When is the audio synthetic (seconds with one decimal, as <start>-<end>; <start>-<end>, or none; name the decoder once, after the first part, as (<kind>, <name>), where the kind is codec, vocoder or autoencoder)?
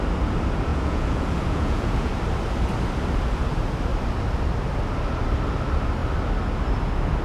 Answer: 0.7-2.1 (vocoder, Vocos)